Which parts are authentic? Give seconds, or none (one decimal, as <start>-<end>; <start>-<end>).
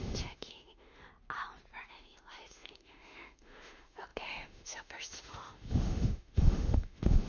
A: 1.0-1.9